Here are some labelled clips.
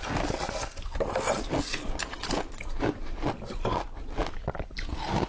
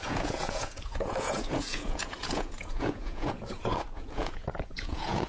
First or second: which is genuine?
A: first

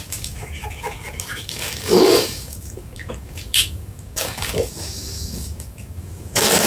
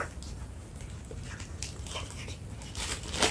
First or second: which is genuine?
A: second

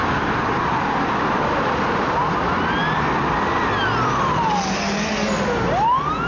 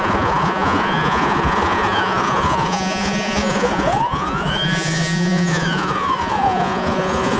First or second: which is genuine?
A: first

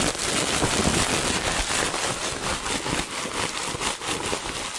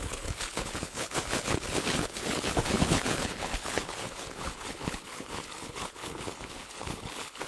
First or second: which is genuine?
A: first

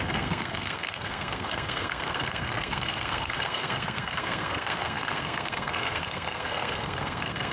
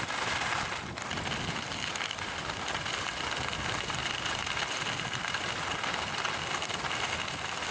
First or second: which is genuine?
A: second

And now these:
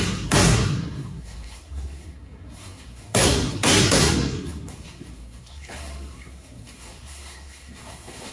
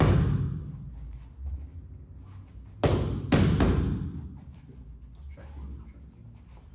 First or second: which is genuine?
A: second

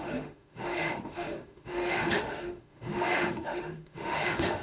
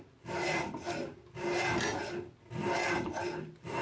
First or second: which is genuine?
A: second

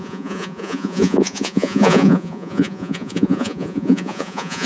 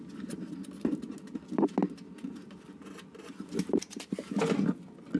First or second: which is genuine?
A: second